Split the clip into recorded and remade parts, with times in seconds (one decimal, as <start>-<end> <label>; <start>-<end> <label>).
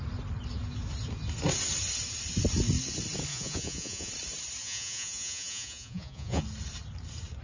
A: 0.0-3.3 recorded; 3.3-4.1 remade; 4.1-4.6 recorded; 4.6-6.4 remade; 6.4-7.4 recorded